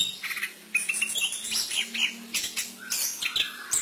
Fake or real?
real